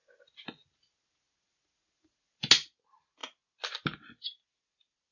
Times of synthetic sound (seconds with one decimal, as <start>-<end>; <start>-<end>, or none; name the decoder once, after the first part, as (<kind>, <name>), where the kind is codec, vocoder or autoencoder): none